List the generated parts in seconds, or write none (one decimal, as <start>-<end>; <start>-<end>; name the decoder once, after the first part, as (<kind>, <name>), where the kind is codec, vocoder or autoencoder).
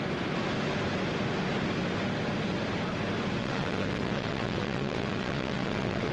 3.4-6.1 (vocoder, WaveNeXt)